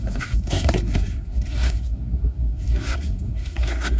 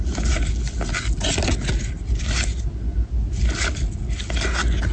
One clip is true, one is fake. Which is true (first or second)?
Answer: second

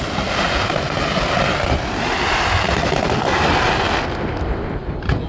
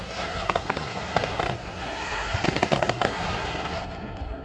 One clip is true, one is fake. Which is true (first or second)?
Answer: first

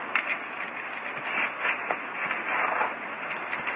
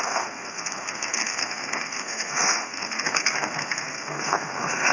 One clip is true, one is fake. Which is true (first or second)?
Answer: first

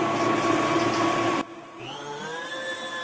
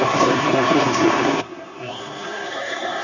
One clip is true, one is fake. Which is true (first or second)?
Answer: first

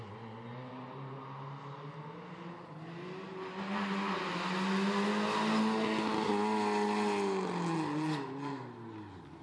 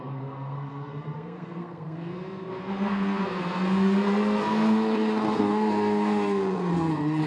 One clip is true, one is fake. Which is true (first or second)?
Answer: first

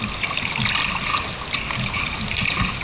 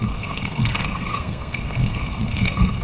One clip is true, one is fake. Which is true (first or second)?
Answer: first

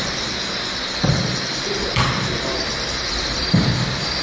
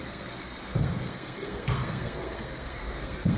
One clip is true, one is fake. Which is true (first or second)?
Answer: first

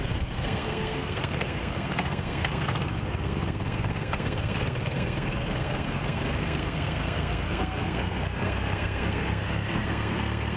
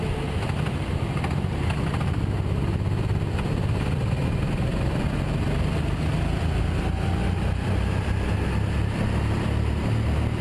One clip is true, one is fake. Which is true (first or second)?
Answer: second